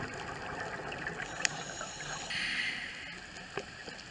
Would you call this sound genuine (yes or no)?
yes